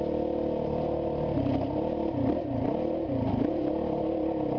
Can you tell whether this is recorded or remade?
recorded